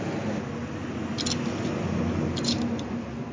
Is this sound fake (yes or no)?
no